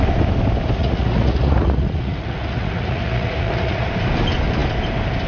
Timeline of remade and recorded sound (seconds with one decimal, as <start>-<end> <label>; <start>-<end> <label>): 0.0-0.8 recorded; 0.8-3.9 remade; 3.9-5.3 recorded